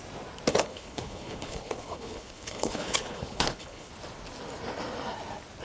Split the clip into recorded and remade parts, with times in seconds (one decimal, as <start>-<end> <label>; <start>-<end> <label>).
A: 0.0-0.5 recorded; 0.5-3.9 remade; 3.9-5.6 recorded